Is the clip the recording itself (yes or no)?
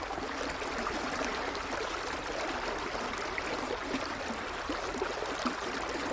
yes